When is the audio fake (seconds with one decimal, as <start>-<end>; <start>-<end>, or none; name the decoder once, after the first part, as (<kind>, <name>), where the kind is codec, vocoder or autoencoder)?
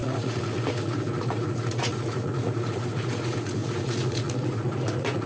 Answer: 0.0-5.3 (vocoder, Vocos)